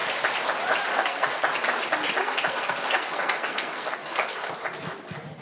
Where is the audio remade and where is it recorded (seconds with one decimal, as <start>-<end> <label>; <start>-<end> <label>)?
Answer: 0.0-0.9 recorded; 0.9-1.4 remade; 1.4-2.2 recorded; 2.2-4.5 remade; 4.5-5.4 recorded